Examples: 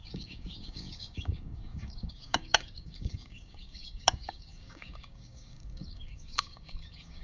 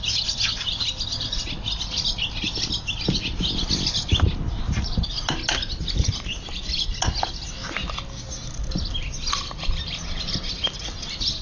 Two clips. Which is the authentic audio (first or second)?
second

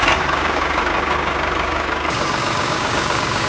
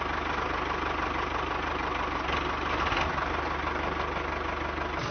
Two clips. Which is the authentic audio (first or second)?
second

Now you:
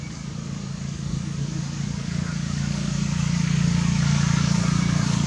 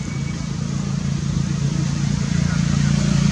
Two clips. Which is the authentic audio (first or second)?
second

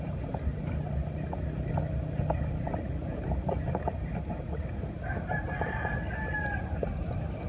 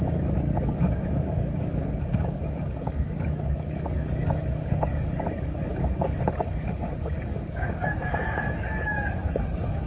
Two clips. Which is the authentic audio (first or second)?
first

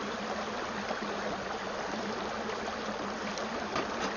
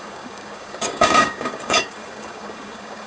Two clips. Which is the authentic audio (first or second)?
first